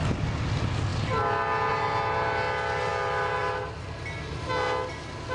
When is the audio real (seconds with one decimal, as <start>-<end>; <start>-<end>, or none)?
0.0-5.3